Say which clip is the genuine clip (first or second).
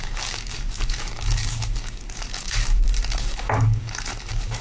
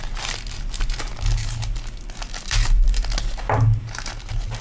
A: second